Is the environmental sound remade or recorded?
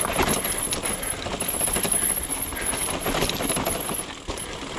recorded